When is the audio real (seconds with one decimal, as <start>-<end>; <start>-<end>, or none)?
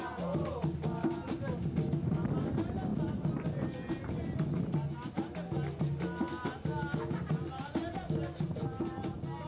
0.0-9.5